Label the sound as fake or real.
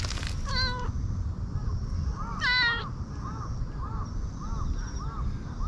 real